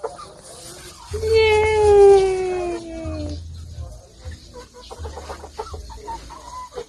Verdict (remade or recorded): recorded